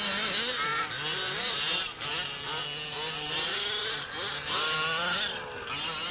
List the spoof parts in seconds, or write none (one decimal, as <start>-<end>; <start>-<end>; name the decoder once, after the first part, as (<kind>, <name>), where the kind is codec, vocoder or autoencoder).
none